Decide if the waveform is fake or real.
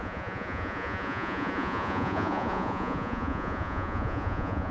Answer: fake